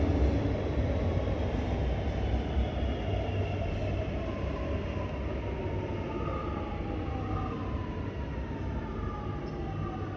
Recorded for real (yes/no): yes